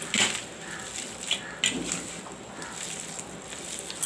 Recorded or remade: recorded